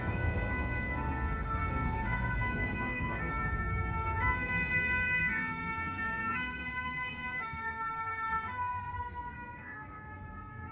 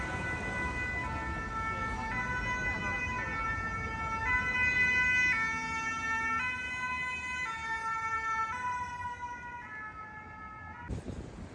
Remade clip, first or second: first